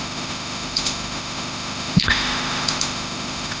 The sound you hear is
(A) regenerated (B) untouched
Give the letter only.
A